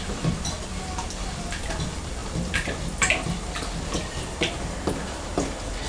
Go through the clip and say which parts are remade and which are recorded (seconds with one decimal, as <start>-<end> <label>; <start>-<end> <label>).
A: 0.0-5.9 recorded